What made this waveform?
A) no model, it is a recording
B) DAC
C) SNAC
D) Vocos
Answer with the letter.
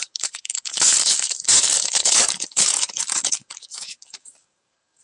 B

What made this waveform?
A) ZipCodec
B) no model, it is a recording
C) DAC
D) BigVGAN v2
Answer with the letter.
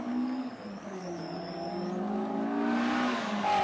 C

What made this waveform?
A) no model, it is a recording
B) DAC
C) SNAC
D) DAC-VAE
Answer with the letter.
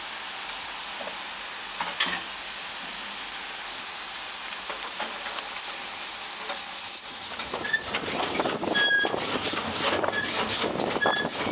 A